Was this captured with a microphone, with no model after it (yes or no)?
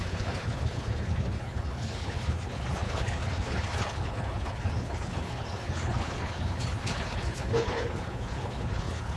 no